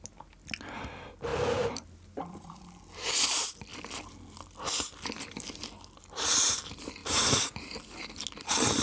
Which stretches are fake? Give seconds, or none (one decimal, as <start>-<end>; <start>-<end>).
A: 1.3-2.6; 7.0-8.0